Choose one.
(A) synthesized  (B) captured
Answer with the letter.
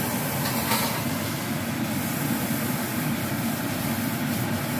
A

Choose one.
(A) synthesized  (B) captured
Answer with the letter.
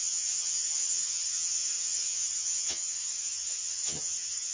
A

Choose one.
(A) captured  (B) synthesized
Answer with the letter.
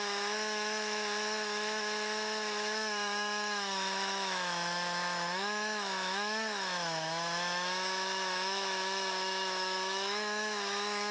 B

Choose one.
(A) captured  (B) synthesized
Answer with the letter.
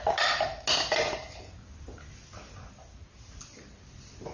A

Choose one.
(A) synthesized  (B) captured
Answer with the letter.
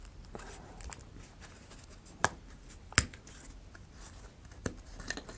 B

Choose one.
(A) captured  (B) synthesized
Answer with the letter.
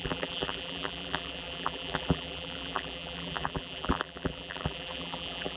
B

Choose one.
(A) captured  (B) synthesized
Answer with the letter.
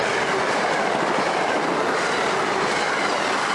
A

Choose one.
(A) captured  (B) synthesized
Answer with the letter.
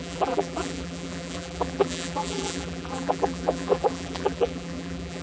B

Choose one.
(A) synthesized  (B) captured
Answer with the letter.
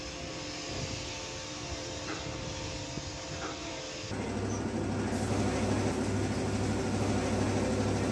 B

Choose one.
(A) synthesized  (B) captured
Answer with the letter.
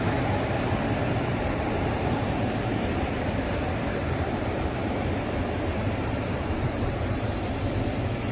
A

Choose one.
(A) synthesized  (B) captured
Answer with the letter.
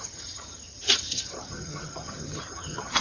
A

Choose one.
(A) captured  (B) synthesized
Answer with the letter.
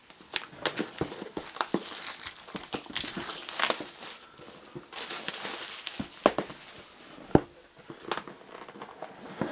A